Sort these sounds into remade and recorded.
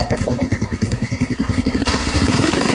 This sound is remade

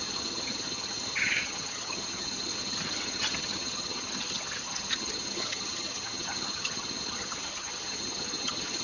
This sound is remade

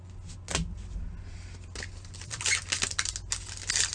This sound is recorded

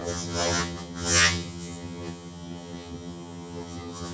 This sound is remade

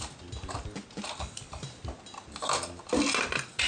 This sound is recorded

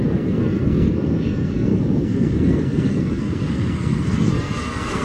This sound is remade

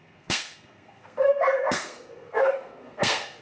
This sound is remade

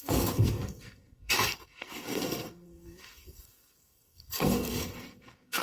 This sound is remade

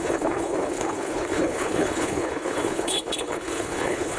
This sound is remade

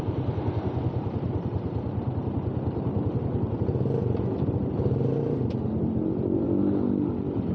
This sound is recorded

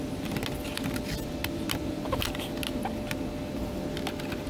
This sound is recorded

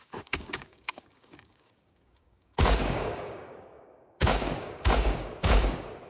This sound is remade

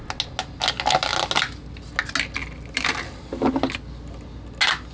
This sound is recorded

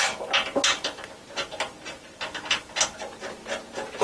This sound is recorded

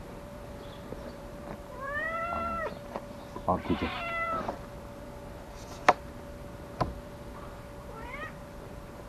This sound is remade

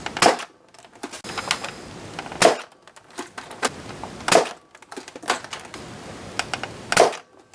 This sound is recorded